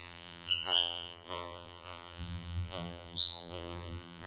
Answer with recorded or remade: remade